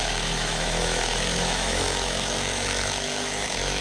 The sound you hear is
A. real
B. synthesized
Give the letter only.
B